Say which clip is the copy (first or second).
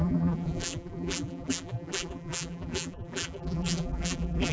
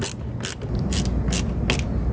first